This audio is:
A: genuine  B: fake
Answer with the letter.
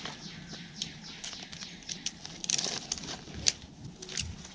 A